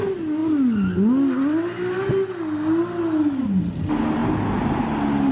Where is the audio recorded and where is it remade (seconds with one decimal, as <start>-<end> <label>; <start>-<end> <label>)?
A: 0.0-5.3 recorded